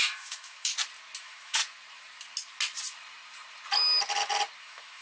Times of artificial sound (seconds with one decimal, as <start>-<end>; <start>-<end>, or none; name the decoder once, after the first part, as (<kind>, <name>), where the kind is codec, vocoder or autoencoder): 0.0-0.7 (autoencoder, DAC-VAE); 1.2-1.6; 4.6-5.0